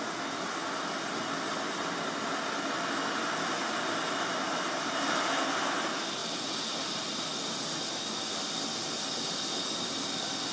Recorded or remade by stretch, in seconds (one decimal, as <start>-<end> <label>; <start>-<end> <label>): 0.0-10.5 recorded